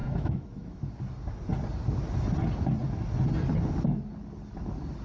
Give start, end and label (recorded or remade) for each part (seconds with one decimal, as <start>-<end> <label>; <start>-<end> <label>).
0.0-0.9 remade; 0.9-5.0 recorded